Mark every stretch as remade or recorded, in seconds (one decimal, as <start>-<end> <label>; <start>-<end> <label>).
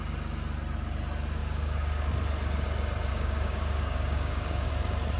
0.0-1.4 recorded; 1.4-2.1 remade; 2.1-3.1 recorded; 3.1-4.7 remade; 4.7-5.2 recorded